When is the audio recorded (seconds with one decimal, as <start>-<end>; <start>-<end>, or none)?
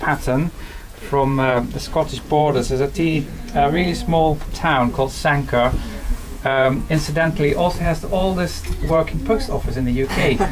4.1-5.9